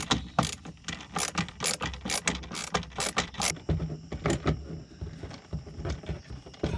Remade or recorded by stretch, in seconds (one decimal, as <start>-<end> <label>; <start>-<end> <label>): 0.0-6.8 recorded